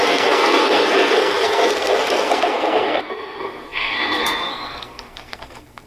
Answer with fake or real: fake